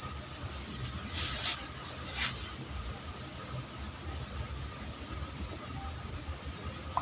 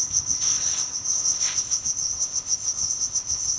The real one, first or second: first